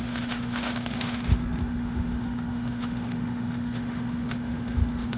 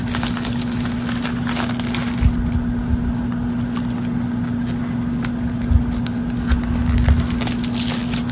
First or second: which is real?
second